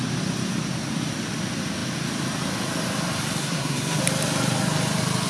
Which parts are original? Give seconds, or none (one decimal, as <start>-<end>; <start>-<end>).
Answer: 0.0-3.4; 4.0-5.3